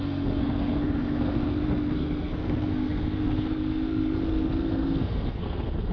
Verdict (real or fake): fake